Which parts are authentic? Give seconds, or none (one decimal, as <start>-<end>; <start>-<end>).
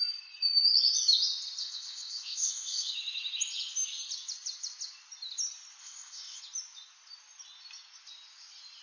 0.0-1.6; 2.9-5.8; 6.4-8.8